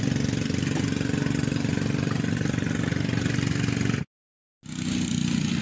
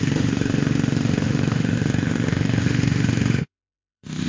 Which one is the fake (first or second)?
second